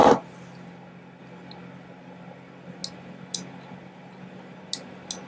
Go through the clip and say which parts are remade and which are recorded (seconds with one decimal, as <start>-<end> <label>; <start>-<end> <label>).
0.0-5.3 recorded